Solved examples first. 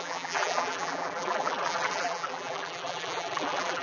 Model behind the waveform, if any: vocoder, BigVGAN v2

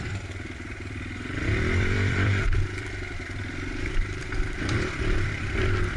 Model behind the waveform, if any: vocoder, BigVGAN v2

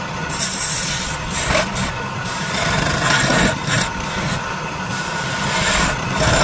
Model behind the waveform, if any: none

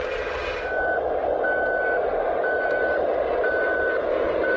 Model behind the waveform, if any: none